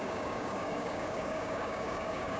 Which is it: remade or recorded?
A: remade